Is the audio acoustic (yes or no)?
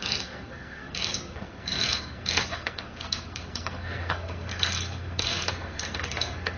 no